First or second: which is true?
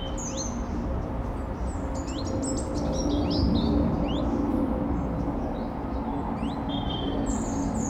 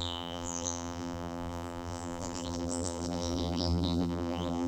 first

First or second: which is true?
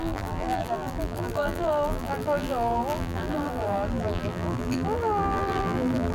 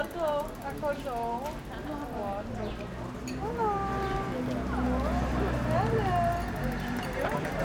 second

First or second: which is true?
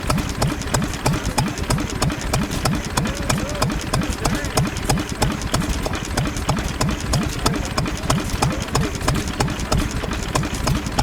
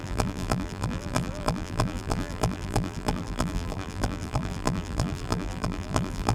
first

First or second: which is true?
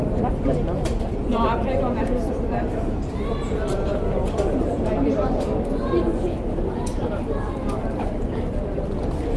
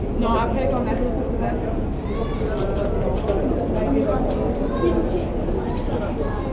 second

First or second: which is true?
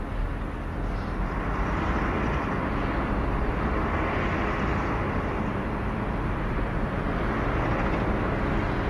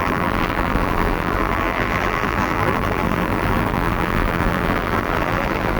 first